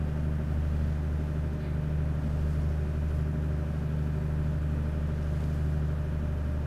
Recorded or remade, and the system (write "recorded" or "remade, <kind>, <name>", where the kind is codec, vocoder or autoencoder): recorded